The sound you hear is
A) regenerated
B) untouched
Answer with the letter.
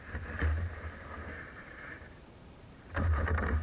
A